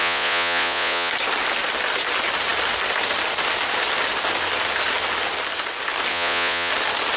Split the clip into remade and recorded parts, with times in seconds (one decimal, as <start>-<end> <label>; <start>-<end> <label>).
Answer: 0.0-1.1 remade; 1.1-6.1 recorded; 6.1-6.7 remade; 6.7-7.2 recorded